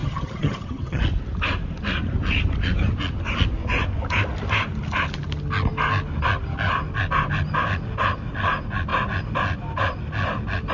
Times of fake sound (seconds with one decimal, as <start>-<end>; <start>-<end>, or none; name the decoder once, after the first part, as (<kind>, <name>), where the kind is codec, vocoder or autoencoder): 0.0-1.0 (vocoder, HiFi-GAN)